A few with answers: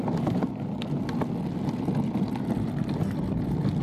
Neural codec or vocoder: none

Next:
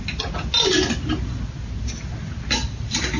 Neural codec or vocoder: none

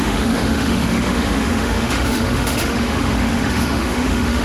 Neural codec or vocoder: autoencoder, DAC-VAE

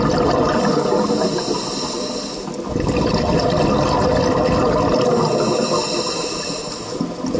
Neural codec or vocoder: none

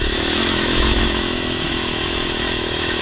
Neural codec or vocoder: autoencoder, DAC-VAE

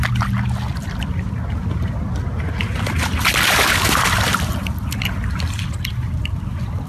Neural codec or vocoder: none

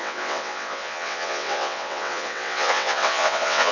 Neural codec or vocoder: vocoder, WaveNeXt